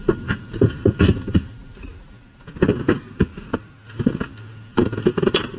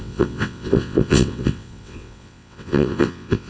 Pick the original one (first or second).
first